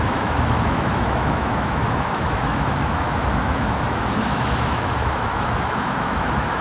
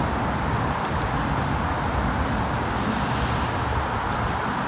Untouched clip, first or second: second